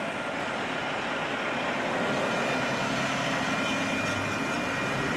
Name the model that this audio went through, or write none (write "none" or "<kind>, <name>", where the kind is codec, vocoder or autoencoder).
none